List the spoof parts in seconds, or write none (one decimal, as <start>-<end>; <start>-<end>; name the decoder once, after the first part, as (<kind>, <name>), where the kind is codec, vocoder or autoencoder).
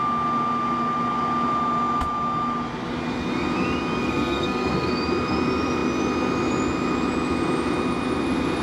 4.0-4.9 (codec, SNAC)